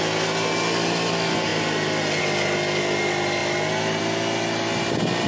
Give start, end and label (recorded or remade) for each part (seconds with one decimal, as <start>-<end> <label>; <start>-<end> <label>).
0.0-5.3 recorded